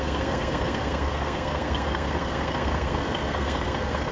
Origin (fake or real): fake